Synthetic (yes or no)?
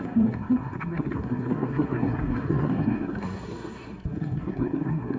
yes